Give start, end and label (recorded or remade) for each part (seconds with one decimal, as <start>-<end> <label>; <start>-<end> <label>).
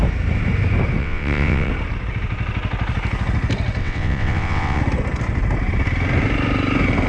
0.0-1.0 recorded; 1.0-1.7 remade; 1.7-3.8 recorded; 3.8-4.8 remade; 4.8-7.1 recorded